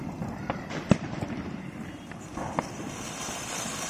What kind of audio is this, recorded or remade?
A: remade